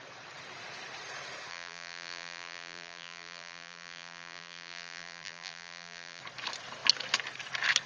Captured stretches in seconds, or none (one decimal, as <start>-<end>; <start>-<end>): 0.0-1.5; 6.2-7.9